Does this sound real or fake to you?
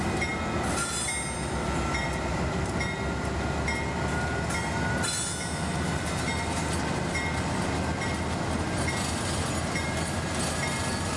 real